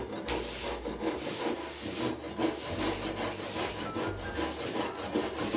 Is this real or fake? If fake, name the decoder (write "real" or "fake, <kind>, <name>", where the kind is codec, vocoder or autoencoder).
real